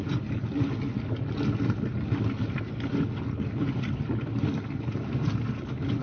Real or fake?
real